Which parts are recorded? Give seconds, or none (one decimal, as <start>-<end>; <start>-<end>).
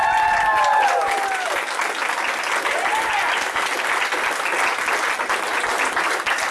0.0-6.5